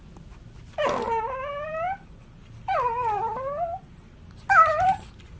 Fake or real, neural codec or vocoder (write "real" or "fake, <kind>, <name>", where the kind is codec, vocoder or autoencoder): real